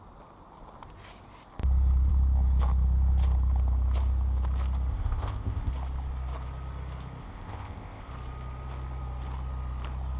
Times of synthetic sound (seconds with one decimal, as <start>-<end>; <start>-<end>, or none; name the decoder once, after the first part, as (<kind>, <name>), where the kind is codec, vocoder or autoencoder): 4.9-5.7 (codec, ZipCodec); 7.2-8.1